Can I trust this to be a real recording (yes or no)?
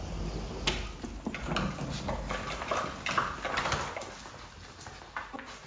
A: yes